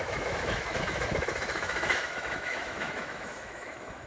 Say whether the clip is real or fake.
fake